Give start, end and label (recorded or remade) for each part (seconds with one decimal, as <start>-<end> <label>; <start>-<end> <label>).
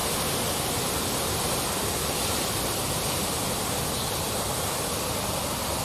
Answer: 0.0-5.8 recorded